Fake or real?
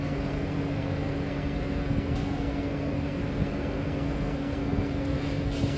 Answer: fake